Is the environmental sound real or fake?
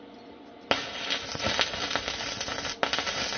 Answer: real